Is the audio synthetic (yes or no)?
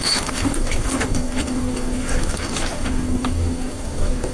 yes